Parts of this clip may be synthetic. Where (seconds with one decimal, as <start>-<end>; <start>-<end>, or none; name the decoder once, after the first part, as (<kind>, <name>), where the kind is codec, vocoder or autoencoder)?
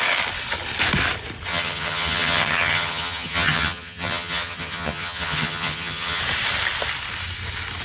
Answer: 1.5-6.2 (vocoder, HiFi-GAN)